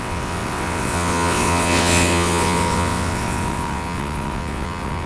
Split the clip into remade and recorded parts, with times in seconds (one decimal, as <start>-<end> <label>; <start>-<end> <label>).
0.0-5.1 remade